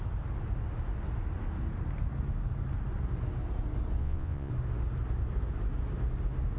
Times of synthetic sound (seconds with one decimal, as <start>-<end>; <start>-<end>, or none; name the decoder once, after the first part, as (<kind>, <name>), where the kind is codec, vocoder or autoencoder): 4.0-4.5 (vocoder, Vocos)